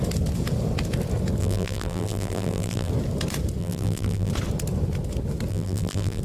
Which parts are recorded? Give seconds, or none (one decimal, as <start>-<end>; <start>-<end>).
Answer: 0.0-1.4; 2.9-3.6; 4.3-5.5